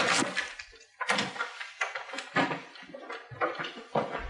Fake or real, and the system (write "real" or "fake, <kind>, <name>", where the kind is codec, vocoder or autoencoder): real